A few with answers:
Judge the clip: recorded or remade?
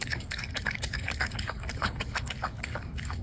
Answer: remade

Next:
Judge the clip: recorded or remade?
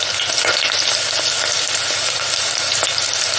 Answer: recorded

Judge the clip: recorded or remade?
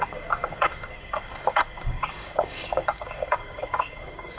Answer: remade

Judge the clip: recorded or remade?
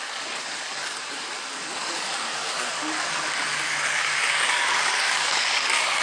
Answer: remade